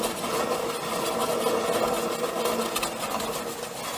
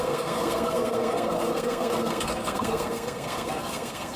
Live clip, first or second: first